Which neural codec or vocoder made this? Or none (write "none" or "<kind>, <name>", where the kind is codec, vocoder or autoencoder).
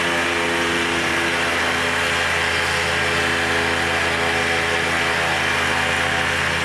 none